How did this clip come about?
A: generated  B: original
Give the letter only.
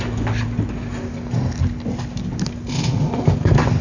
B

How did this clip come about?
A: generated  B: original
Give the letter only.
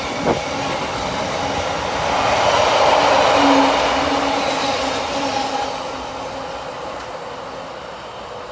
B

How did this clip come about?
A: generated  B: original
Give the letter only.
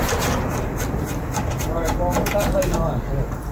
A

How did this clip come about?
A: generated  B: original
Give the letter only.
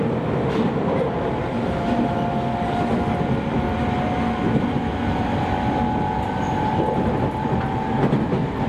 B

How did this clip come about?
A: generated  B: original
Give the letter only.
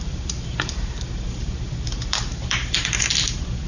A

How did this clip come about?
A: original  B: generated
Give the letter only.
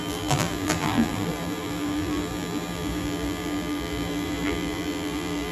B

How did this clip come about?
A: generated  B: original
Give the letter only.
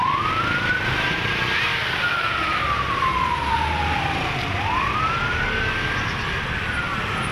B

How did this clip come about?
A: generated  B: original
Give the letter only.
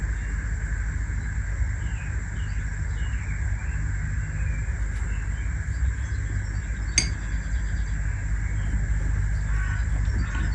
B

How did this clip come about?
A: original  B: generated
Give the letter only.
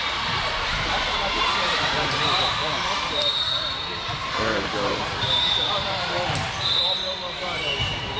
B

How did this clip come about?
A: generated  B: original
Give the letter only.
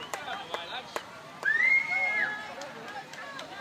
A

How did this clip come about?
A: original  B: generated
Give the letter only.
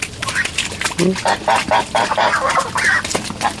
A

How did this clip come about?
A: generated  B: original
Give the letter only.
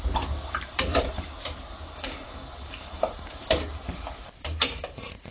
A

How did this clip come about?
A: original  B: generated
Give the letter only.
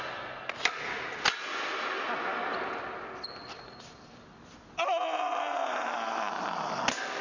A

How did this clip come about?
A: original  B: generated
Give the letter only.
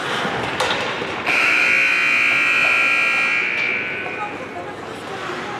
A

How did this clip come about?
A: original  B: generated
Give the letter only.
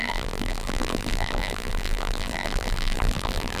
B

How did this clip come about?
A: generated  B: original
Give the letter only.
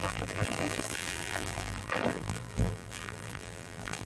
A